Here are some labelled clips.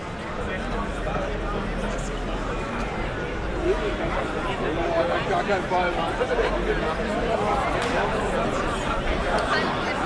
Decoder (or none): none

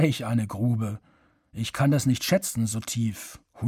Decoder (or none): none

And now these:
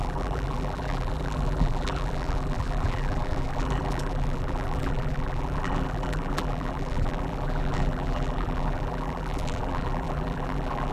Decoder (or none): vocoder, BigVGAN v2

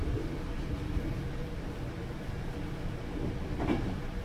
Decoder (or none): vocoder, BigVGAN v2